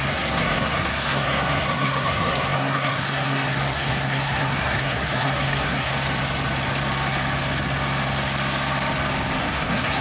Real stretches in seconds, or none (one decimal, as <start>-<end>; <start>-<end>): 5.9-9.4